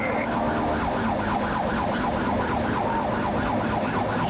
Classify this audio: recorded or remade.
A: recorded